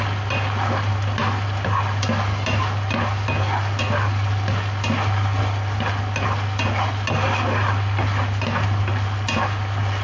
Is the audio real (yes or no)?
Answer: yes